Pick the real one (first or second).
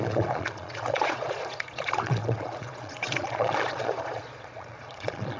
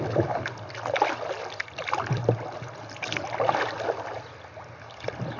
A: second